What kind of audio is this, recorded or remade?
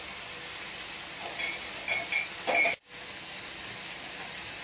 remade